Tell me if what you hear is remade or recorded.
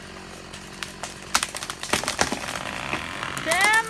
recorded